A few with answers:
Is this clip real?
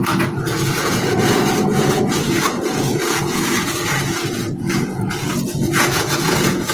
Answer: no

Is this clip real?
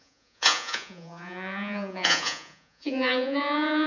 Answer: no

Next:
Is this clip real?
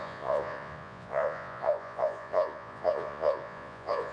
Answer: no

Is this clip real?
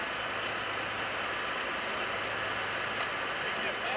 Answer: yes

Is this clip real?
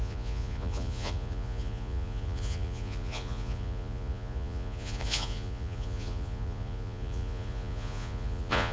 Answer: no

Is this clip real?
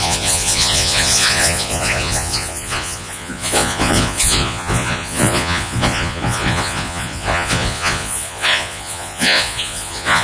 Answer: no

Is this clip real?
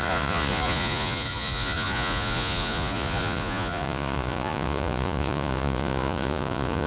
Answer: no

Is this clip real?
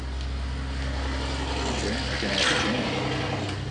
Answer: yes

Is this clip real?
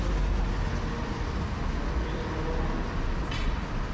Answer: yes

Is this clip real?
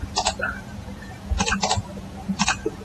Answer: no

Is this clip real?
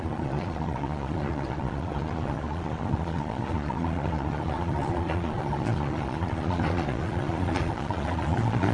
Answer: no